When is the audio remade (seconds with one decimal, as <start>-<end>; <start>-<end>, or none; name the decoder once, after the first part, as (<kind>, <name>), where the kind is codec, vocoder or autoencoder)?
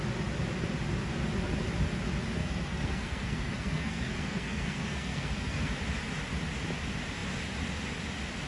2.4-5.7 (codec, SNAC)